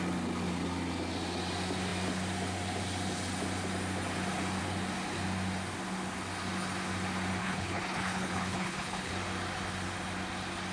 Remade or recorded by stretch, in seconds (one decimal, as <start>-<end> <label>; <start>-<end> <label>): 0.0-7.4 recorded; 7.4-9.1 remade; 9.1-10.7 recorded